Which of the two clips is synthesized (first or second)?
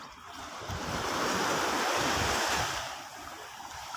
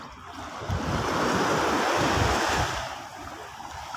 first